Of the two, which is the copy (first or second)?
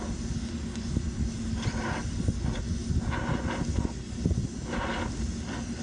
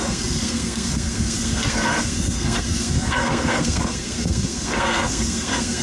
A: second